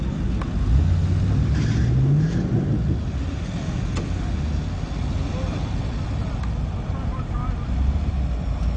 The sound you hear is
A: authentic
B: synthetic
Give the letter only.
A